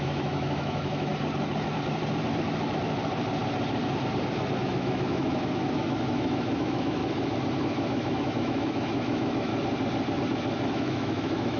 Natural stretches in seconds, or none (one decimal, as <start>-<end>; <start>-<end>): 1.1-4.6; 7.0-7.6; 9.5-10.7